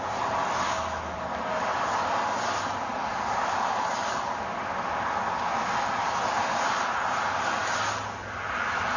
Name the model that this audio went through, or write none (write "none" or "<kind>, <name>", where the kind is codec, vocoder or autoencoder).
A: none